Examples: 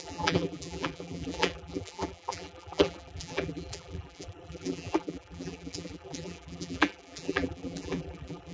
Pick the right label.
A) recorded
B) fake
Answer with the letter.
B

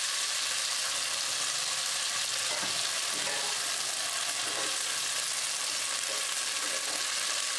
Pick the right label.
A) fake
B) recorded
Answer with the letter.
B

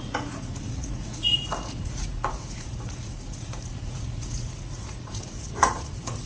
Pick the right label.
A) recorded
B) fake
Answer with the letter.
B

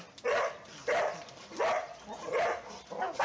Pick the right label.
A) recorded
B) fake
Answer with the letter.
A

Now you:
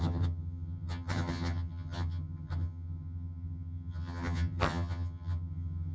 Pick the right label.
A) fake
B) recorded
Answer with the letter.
A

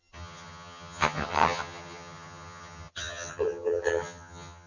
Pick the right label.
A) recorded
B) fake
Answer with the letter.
B